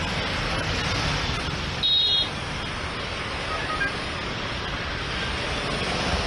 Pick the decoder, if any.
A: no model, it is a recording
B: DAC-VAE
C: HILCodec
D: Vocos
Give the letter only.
A